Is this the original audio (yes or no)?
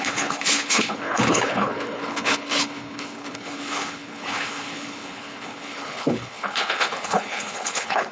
no